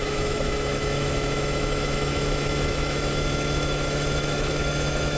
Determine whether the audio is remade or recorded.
remade